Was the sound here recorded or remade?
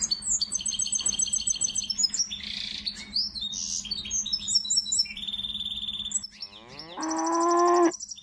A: recorded